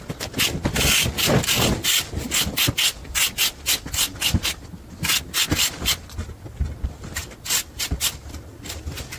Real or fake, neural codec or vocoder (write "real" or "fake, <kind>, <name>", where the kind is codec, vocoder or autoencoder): real